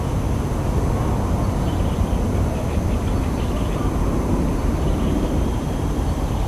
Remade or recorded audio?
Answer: recorded